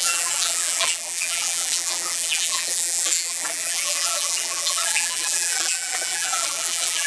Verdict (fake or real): fake